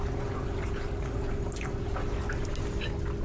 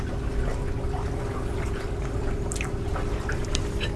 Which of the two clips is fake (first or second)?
second